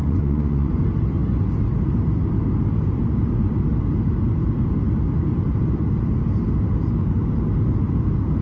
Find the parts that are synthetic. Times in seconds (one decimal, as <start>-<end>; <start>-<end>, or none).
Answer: 0.0-0.7